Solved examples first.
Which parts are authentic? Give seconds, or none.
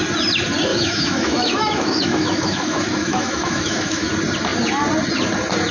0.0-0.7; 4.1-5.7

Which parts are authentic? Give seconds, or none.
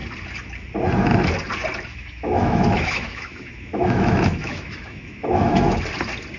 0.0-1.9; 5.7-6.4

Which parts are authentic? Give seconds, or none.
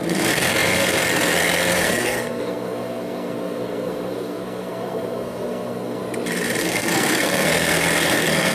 6.0-6.6